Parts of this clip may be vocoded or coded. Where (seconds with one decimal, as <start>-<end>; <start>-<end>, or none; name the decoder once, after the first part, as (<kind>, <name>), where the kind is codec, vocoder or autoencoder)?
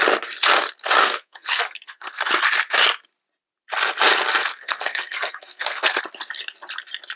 1.0-2.3 (codec, SNAC); 4.5-6.0